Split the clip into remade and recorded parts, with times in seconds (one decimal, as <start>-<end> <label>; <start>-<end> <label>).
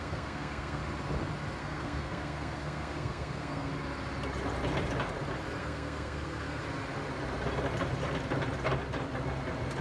0.0-0.8 remade; 0.8-1.6 recorded; 1.6-3.7 remade; 3.7-5.6 recorded; 5.6-6.6 remade; 6.6-9.8 recorded